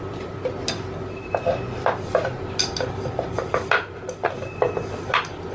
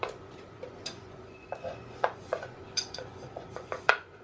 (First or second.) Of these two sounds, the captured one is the first